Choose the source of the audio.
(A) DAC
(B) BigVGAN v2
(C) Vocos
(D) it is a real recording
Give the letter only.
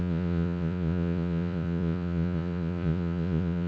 C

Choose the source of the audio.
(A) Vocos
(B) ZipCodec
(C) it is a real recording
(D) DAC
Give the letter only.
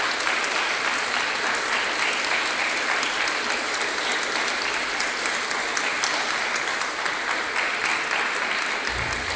C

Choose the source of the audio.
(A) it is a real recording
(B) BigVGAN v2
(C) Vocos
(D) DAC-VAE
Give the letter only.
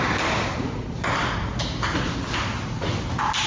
A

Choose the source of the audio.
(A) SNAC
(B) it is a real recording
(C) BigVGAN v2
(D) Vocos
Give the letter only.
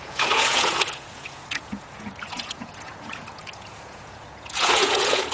D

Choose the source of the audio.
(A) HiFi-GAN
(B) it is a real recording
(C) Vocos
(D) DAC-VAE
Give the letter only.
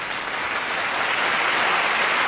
B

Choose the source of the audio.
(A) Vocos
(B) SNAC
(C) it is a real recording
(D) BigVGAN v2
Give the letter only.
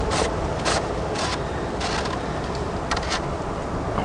C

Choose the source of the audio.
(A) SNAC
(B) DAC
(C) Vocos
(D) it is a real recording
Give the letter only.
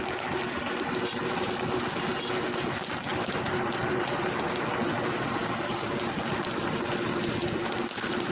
D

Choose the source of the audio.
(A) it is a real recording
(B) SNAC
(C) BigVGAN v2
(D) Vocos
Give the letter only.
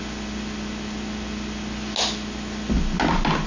A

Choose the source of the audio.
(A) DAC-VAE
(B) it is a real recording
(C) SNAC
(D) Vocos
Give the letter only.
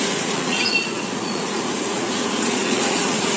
D